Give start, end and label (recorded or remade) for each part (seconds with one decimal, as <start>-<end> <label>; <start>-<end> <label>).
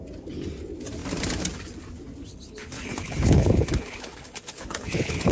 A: 0.0-2.3 recorded; 2.3-5.3 remade